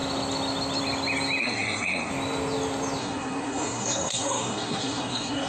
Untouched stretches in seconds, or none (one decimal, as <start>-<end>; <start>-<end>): 0.0-1.4; 2.1-3.0